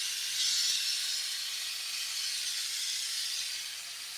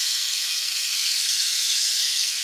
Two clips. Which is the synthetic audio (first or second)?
second